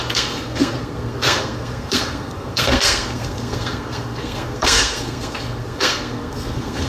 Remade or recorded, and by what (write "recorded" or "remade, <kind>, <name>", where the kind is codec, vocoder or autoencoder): remade, codec, SNAC